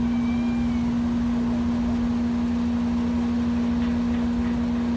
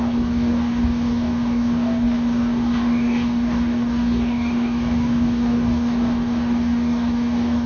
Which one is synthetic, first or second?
second